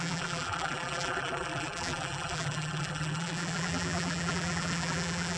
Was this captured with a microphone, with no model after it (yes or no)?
no